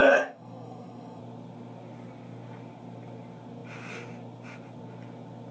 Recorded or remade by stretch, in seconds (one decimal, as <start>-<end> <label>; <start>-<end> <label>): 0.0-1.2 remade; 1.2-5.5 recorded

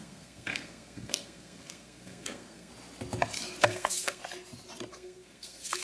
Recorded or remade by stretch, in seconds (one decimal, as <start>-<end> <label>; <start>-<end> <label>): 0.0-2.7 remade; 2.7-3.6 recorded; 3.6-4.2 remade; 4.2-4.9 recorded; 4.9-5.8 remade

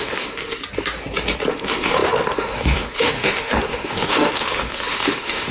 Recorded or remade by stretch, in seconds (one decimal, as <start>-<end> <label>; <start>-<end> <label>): 0.0-0.6 remade; 0.6-1.5 recorded; 1.5-5.5 remade

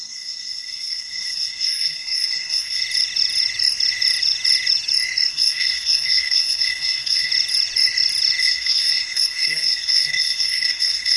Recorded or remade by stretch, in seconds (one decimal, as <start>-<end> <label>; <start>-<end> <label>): 0.0-2.8 remade; 2.8-5.3 recorded; 5.3-7.3 remade; 7.3-8.4 recorded; 8.4-11.2 remade